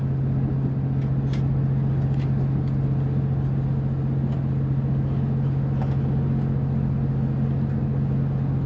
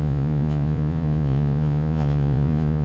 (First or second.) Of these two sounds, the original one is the first